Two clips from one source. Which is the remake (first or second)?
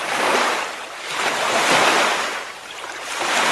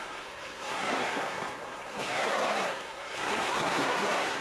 second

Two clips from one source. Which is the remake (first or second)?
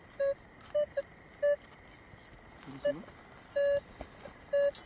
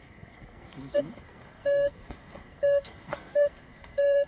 second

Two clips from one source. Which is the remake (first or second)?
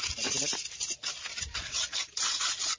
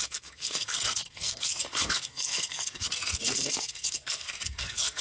second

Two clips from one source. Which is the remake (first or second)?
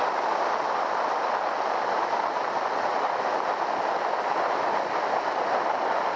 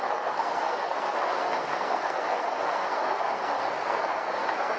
second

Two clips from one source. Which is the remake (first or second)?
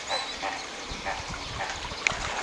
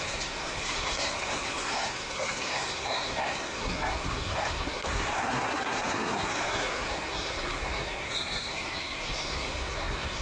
second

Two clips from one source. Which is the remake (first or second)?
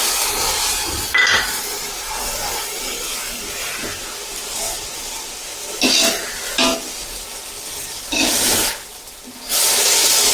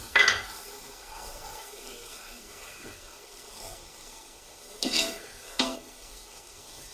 second